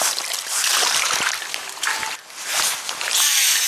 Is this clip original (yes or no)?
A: no